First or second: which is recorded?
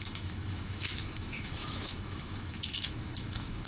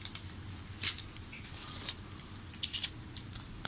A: second